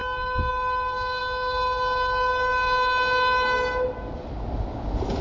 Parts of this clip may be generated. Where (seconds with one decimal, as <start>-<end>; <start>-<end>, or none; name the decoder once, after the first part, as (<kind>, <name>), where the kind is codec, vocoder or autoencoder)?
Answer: none